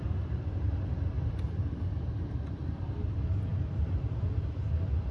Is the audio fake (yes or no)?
yes